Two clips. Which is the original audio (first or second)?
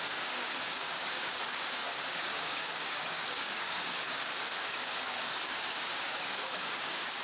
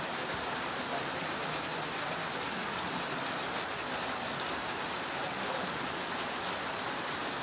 second